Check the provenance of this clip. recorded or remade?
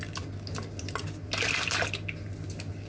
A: recorded